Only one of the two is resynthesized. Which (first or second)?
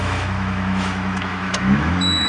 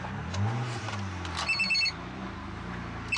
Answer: first